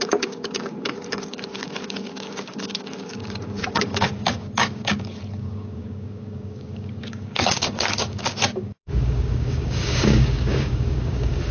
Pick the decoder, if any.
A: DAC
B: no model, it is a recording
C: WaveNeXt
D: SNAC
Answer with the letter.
A